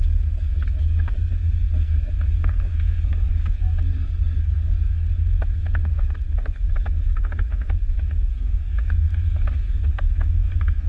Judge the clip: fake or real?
fake